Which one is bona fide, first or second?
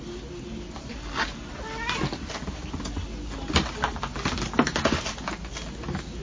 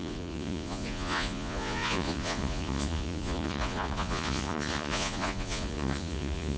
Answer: first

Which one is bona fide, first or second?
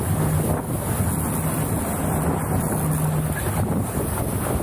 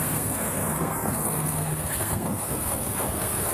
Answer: first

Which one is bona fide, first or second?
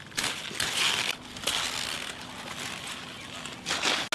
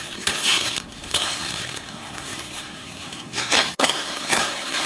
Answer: first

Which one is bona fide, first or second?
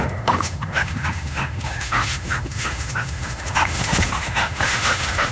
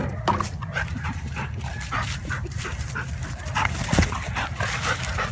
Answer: second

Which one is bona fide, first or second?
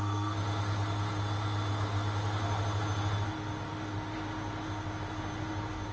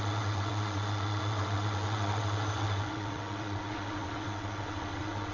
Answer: first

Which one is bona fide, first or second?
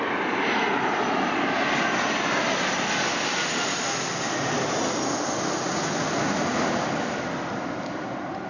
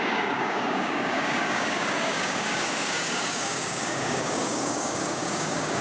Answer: first